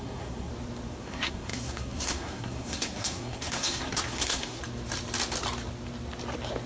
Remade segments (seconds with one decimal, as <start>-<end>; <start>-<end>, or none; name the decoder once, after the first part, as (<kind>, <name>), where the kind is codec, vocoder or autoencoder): 0.0-0.5 (codec, SNAC); 1.0-4.6